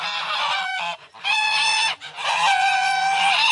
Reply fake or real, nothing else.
fake